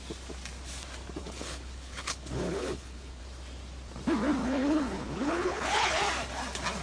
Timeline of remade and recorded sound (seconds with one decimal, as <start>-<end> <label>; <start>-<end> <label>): 0.0-1.2 recorded; 1.2-3.2 remade; 3.2-4.4 recorded; 4.4-6.0 remade; 6.0-6.8 recorded

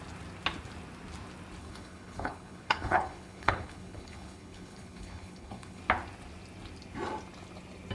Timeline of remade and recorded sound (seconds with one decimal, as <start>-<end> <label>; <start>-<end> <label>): 0.0-1.6 recorded; 1.6-5.8 remade; 5.8-7.9 recorded

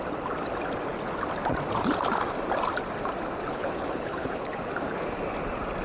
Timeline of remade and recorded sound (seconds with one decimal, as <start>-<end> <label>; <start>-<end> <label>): 0.0-3.5 recorded; 3.5-4.6 remade; 4.6-5.8 recorded

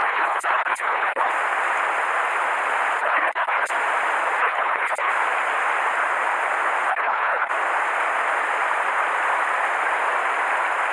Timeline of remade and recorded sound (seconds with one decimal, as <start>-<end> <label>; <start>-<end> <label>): 0.0-1.3 remade; 1.3-3.0 recorded; 3.0-3.7 remade; 3.7-4.4 recorded; 4.4-5.1 remade; 5.1-6.9 recorded; 6.9-7.5 remade; 7.5-10.9 recorded